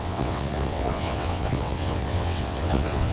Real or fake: fake